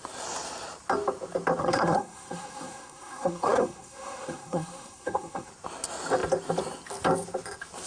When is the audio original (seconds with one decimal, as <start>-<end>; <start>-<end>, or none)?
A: 0.0-1.6; 5.5-7.9